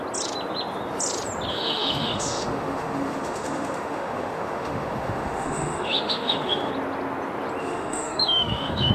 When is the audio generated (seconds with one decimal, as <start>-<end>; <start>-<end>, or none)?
1.5-6.7; 7.6-8.9